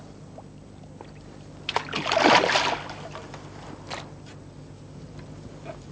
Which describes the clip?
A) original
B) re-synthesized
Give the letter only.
A